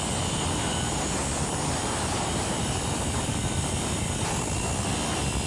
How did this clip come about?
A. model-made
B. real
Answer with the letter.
B